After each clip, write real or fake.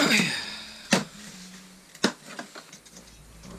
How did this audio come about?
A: real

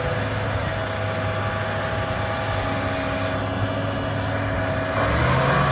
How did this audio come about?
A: real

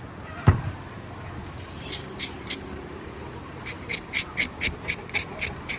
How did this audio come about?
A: real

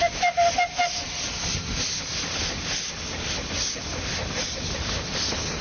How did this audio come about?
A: real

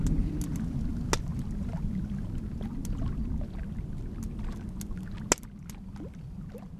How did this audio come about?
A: real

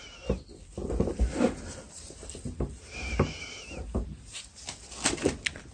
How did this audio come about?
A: real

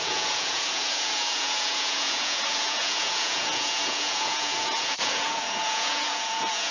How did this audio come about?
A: fake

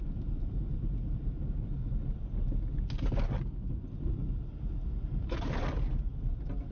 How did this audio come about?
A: real